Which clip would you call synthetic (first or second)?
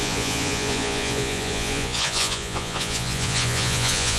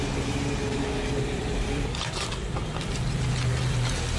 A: first